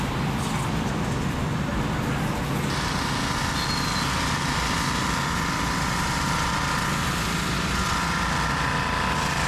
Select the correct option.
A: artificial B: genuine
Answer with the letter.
B